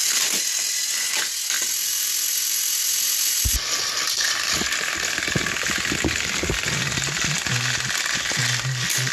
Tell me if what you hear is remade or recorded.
recorded